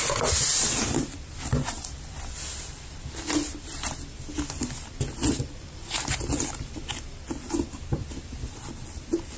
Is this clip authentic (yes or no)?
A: yes